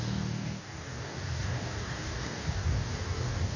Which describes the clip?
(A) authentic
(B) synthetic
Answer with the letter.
B